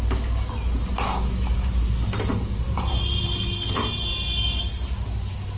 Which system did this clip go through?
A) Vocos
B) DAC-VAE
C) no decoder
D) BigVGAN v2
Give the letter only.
C